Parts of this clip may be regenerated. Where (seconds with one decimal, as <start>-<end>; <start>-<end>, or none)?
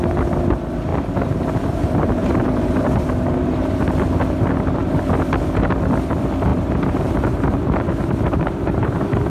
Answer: 2.2-3.8; 6.5-8.9